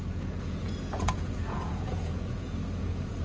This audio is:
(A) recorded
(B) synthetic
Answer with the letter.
B